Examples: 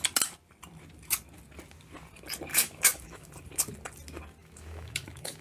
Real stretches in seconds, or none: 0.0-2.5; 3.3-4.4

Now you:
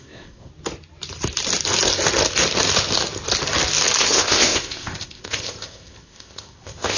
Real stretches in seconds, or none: 0.5-4.0

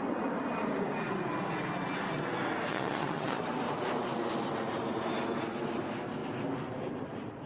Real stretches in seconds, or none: 0.0-2.7; 3.4-7.5

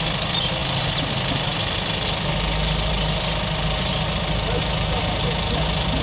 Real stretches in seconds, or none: 0.0-6.0

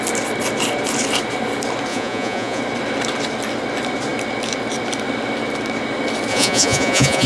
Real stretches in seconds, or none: 0.0-1.9; 2.6-6.3